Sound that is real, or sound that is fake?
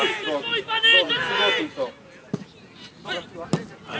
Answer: real